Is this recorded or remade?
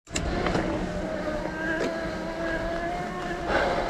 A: recorded